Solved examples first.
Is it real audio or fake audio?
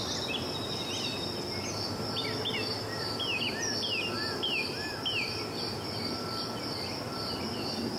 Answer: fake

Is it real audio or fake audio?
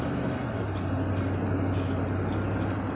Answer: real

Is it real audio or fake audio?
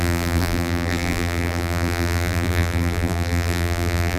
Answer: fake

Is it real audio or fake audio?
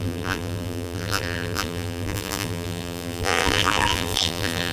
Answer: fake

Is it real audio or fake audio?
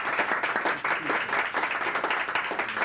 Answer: real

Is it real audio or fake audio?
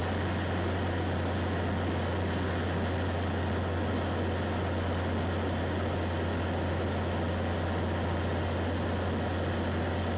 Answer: real